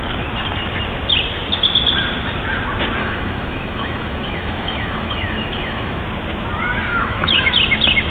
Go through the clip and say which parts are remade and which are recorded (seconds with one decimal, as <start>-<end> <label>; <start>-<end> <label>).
0.0-3.0 recorded; 3.0-6.0 remade; 6.0-6.9 recorded; 6.9-7.5 remade; 7.5-8.1 recorded